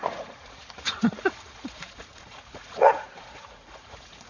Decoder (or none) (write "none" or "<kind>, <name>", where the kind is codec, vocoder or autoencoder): vocoder, Vocos